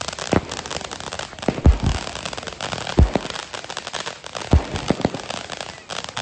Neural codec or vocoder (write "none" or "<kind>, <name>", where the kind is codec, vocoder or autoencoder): none